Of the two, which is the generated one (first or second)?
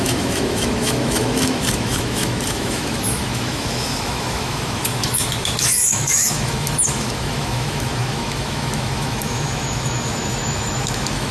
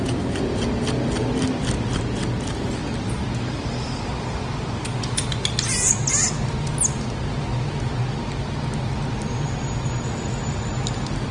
first